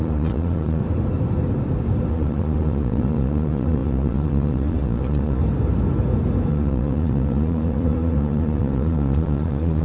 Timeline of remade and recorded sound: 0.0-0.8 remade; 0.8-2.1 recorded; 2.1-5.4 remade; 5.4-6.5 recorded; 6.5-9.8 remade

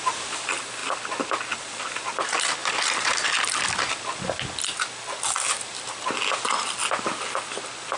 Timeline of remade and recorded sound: 0.0-8.0 recorded

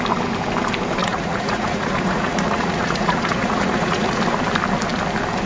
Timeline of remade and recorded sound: 0.0-1.0 recorded; 1.0-4.2 remade; 4.2-5.5 recorded